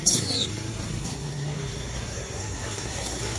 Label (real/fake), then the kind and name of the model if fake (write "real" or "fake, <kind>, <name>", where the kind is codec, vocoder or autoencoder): fake, codec, SNAC